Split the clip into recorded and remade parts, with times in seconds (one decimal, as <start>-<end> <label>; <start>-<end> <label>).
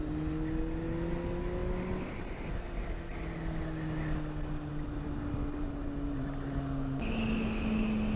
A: 0.0-8.2 recorded